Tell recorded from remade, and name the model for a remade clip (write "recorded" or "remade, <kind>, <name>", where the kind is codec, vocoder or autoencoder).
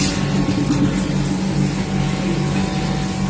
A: recorded